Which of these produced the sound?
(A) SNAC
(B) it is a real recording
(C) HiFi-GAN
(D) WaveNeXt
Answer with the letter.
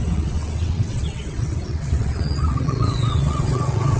D